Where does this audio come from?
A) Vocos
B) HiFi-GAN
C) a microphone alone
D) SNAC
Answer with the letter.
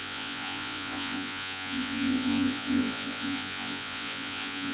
A